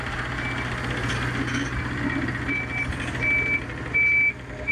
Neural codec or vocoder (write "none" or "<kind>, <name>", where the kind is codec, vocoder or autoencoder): none